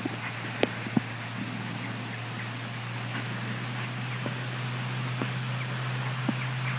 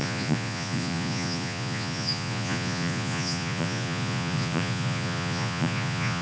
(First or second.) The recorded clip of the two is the first